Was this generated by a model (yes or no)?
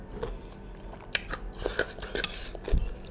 no